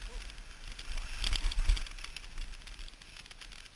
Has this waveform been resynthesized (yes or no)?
no